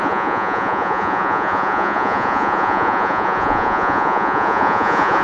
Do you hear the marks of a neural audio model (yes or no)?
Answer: yes